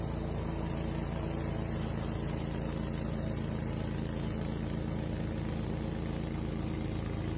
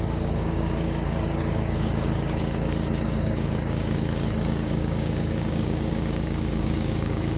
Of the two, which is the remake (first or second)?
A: second